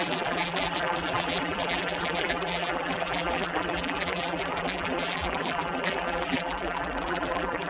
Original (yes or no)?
no